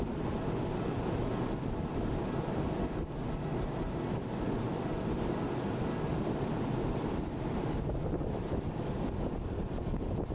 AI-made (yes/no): no